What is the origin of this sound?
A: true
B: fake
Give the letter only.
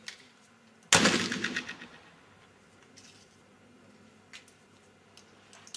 A